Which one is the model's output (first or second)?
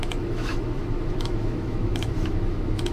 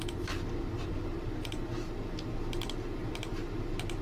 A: first